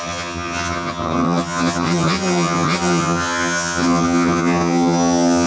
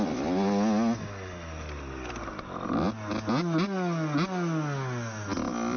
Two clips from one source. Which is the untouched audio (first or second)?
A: second